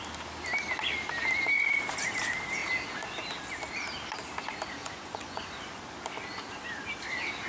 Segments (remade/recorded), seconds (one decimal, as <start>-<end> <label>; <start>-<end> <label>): 0.0-4.8 recorded; 4.8-5.8 remade; 5.8-7.5 recorded